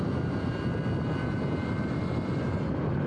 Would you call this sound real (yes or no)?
yes